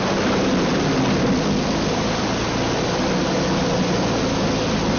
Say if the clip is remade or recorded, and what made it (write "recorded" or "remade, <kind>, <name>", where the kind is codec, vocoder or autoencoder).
recorded